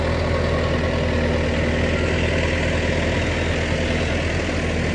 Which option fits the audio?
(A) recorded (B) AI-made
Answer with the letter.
A